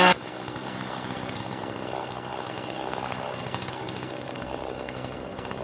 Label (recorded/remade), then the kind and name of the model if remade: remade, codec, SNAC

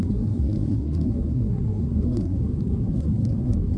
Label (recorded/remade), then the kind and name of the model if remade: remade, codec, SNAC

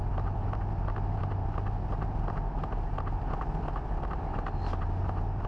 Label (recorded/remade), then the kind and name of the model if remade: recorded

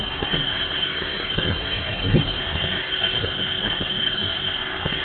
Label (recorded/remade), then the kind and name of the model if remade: remade, codec, SNAC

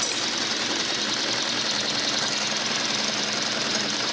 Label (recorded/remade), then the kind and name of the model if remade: recorded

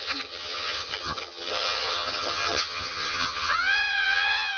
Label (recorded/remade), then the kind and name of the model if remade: remade, vocoder, HiFi-GAN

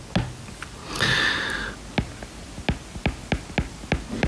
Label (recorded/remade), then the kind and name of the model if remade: recorded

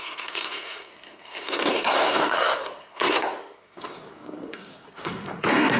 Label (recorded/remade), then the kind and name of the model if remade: remade, codec, SNAC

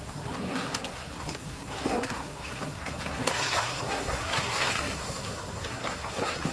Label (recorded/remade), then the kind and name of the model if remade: remade, codec, SNAC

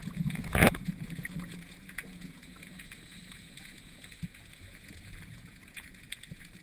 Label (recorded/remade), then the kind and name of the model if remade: remade, vocoder, Vocos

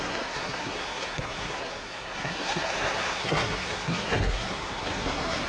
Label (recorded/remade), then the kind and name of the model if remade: remade, codec, SNAC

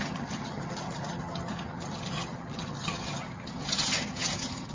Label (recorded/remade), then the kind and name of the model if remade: remade, vocoder, HiFi-GAN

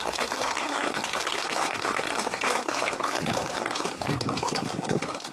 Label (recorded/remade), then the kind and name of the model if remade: remade, codec, SNAC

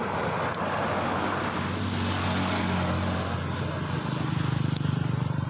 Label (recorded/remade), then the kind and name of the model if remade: recorded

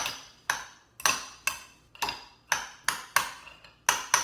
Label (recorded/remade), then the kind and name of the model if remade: recorded